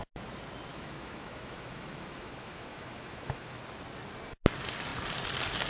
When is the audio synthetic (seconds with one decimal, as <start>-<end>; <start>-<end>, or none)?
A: 0.7-3.6